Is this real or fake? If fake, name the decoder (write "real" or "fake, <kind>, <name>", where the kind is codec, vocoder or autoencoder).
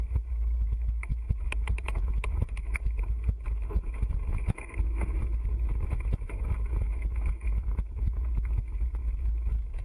fake, autoencoder, DAC-VAE